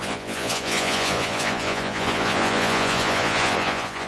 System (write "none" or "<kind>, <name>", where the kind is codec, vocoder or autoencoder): vocoder, Vocos